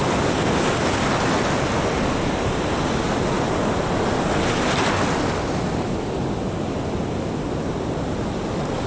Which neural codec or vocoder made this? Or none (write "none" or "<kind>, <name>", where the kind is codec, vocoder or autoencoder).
none